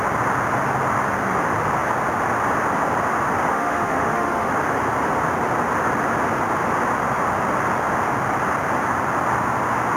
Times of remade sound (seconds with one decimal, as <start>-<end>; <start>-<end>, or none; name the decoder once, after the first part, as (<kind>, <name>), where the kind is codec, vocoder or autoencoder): 3.5-4.5 (autoencoder, DAC-VAE)